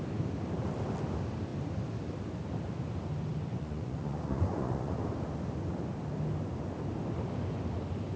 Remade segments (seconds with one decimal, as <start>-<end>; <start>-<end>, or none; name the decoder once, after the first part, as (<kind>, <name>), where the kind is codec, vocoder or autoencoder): 3.5-5.0 (vocoder, Vocos)